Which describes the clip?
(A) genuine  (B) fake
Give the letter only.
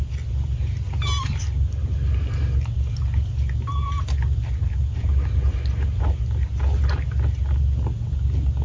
A